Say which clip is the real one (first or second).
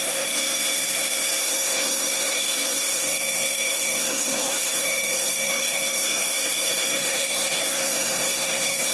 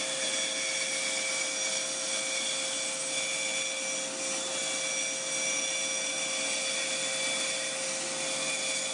second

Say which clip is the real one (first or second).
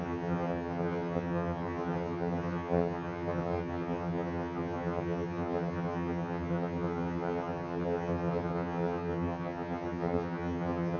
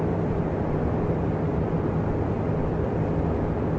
second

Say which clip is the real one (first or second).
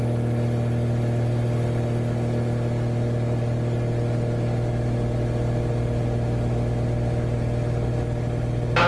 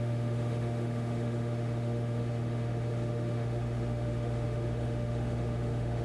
first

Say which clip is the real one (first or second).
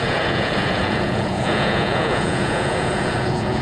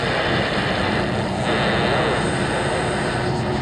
second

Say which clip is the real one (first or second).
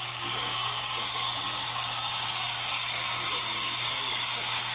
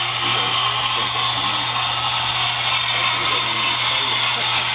second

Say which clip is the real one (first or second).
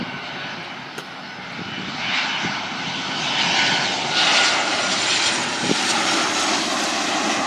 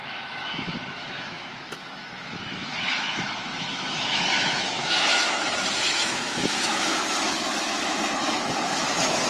first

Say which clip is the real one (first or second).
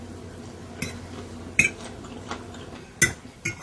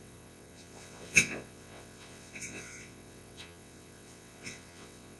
first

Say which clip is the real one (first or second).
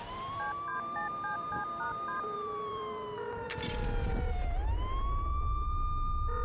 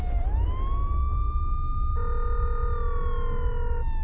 second